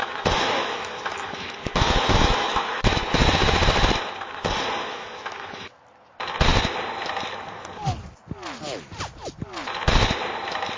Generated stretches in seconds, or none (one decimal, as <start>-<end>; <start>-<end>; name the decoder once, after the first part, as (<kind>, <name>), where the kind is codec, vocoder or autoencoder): 0.0-3.3 (autoencoder, DAC-VAE); 4.9-5.8